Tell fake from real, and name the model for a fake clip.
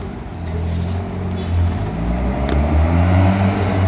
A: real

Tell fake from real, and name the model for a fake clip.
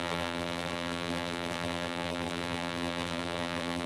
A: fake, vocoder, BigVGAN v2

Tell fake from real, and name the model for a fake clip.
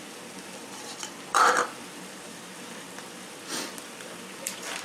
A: fake, vocoder, BigVGAN v2